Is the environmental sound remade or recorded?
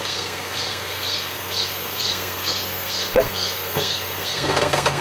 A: remade